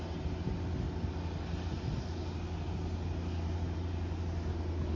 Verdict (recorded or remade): recorded